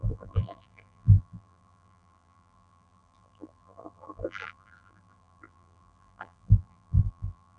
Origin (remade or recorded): remade